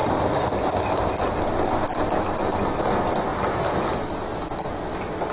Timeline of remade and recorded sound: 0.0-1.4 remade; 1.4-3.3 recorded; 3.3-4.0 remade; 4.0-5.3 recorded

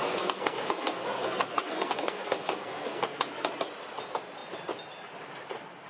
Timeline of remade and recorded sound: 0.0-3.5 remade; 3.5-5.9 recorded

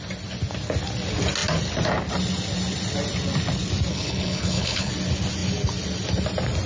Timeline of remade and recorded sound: 0.0-3.9 recorded; 3.9-4.9 remade; 4.9-6.7 recorded

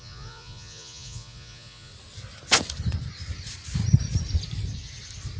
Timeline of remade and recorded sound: 0.0-1.9 remade; 1.9-5.4 recorded